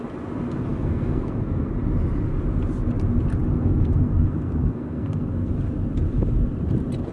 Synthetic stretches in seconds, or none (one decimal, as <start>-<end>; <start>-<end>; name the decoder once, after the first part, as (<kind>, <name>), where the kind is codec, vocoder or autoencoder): 0.7-1.7 (codec, SNAC); 3.5-5.5